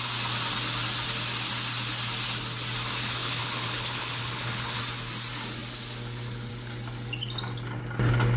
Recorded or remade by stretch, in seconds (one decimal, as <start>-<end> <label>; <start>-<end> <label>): 0.0-3.0 recorded; 3.0-4.8 remade; 4.8-8.4 recorded